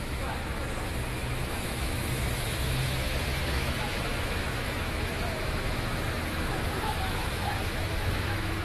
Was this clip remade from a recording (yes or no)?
yes